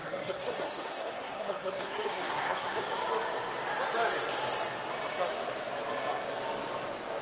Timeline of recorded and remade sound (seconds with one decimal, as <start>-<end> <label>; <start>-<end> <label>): 0.0-2.8 remade; 2.8-7.2 recorded